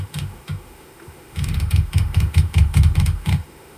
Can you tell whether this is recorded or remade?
remade